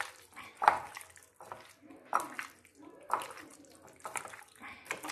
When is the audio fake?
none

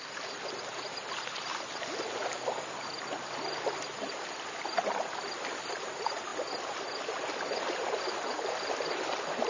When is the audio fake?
none

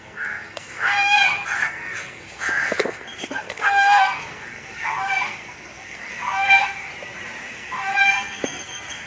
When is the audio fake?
0.0-6.9 (codec, SNAC); 7.5-9.1